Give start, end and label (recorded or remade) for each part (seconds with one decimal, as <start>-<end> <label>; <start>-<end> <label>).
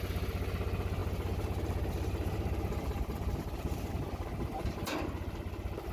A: 0.0-1.0 recorded; 1.0-3.9 remade; 3.9-5.9 recorded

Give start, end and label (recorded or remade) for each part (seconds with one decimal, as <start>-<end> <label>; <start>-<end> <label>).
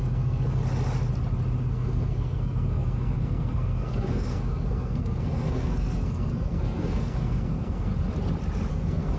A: 0.0-0.6 remade; 0.6-1.6 recorded; 1.6-7.9 remade; 7.9-8.7 recorded; 8.7-9.2 remade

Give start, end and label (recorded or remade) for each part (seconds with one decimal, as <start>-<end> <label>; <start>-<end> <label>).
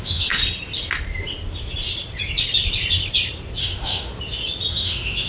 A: 0.0-0.4 remade; 0.4-3.6 recorded; 3.6-4.1 remade; 4.1-4.7 recorded; 4.7-5.3 remade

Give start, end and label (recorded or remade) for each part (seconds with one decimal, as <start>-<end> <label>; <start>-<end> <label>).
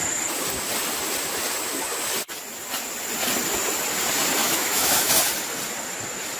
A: 0.0-4.4 recorded; 4.4-5.1 remade; 5.1-6.4 recorded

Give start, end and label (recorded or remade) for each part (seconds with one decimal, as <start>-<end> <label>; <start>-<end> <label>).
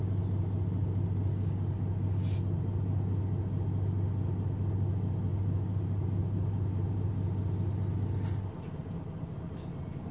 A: 0.0-5.3 recorded; 5.3-7.1 remade; 7.1-10.1 recorded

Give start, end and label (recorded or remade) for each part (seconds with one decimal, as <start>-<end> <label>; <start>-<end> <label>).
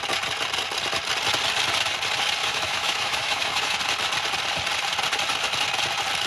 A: 0.0-2.4 recorded; 2.4-3.8 remade; 3.8-6.3 recorded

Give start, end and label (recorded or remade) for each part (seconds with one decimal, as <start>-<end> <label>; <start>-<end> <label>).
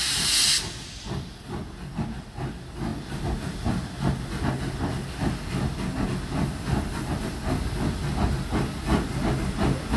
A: 0.0-10.0 recorded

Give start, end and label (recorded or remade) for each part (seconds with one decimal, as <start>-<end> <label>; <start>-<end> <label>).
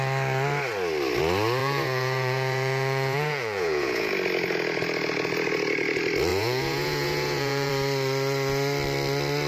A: 0.0-1.6 recorded; 1.6-4.1 remade; 4.1-6.3 recorded; 6.3-7.7 remade; 7.7-9.5 recorded